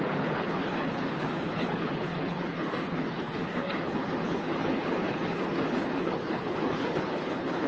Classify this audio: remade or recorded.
remade